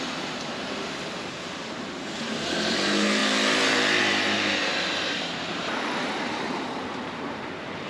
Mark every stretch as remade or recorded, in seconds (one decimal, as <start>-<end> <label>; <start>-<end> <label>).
0.0-7.9 remade